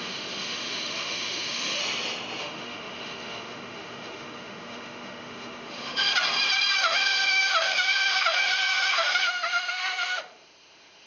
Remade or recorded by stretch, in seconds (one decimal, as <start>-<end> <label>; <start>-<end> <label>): 0.0-1.8 remade; 1.8-2.4 recorded; 2.4-6.1 remade; 6.1-6.8 recorded; 6.8-11.1 remade